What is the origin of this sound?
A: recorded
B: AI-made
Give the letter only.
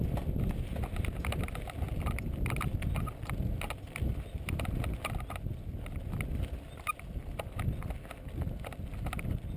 A